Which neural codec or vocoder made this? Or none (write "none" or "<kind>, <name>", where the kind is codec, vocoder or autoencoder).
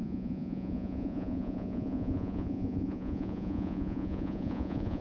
vocoder, Vocos